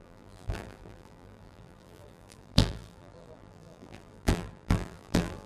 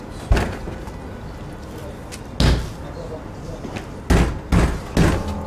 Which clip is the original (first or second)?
second